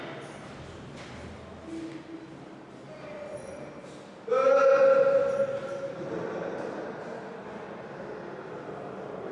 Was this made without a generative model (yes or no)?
yes